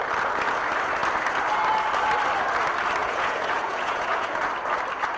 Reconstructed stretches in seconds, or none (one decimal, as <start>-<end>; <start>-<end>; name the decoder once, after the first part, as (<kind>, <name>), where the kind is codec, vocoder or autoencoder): 3.0-4.5 (vocoder, Vocos)